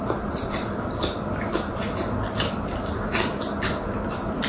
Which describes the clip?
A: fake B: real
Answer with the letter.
B